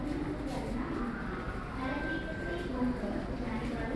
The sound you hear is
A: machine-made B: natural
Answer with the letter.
B